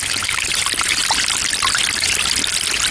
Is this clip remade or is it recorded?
recorded